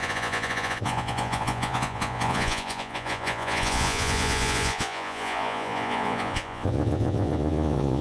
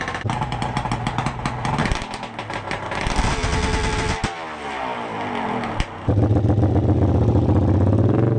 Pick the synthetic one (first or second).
first